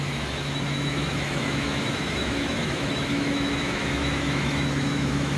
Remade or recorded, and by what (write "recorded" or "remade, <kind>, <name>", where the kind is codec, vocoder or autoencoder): remade, autoencoder, DAC-VAE